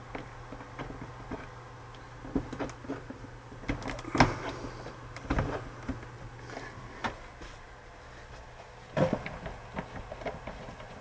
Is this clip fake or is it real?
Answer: real